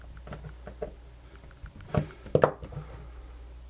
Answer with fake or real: real